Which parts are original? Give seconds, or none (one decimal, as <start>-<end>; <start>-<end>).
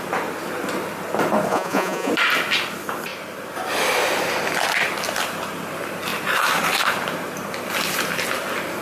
0.0-1.5; 2.1-8.8